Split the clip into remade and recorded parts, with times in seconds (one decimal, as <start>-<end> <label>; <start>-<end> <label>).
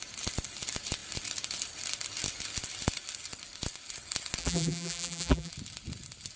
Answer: 0.0-4.4 recorded; 4.4-5.5 remade; 5.5-6.4 recorded